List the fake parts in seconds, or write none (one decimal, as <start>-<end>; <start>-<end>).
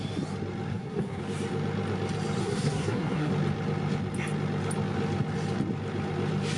0.7-1.2; 2.4-3.3